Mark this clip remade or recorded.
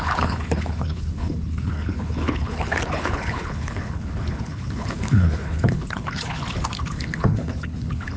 remade